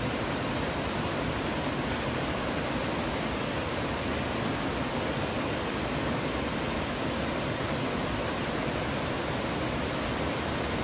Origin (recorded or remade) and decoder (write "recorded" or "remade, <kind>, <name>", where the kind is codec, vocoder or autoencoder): recorded